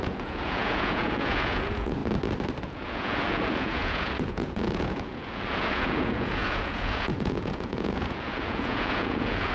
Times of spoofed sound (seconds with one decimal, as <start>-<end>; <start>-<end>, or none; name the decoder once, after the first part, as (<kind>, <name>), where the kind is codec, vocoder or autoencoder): 0.0-2.0 (vocoder, Vocos); 2.6-9.5